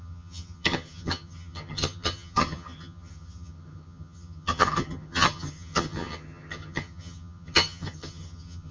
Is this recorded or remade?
remade